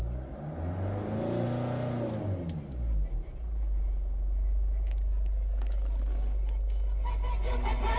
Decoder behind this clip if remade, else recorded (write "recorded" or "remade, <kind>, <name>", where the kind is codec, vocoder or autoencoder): recorded